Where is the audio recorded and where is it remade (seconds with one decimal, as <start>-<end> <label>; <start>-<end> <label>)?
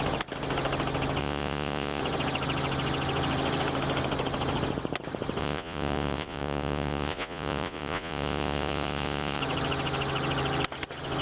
0.0-1.2 recorded; 1.2-2.0 remade; 2.0-5.4 recorded; 5.4-9.4 remade; 9.4-11.2 recorded